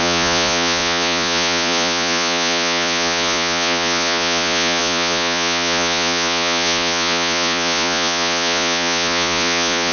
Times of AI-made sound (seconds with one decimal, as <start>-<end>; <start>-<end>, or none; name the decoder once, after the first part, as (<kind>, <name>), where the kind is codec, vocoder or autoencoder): 0.0-9.9 (vocoder, Vocos)